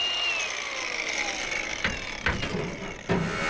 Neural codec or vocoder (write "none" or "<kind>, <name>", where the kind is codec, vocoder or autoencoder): none